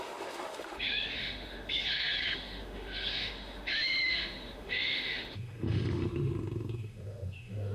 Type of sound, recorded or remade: remade